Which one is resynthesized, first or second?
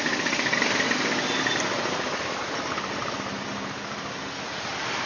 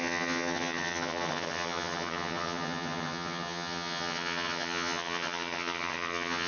second